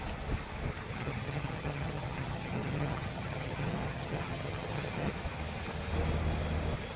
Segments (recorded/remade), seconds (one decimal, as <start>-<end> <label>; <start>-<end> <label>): 0.0-0.9 recorded; 0.9-5.1 remade; 5.1-7.0 recorded